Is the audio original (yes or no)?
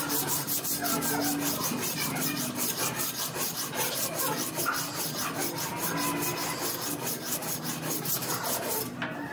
yes